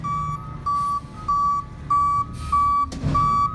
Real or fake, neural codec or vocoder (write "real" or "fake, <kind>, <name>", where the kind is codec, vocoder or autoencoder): real